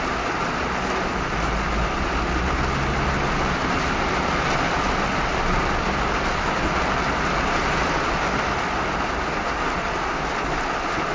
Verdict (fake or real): real